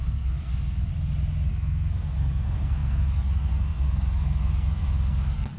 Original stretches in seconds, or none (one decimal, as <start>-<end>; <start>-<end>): 0.9-1.5